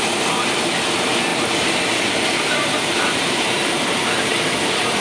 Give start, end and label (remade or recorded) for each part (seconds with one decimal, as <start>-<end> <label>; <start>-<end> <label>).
0.0-1.3 recorded; 1.3-4.3 remade; 4.3-5.0 recorded